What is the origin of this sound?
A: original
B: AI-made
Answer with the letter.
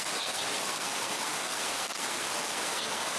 B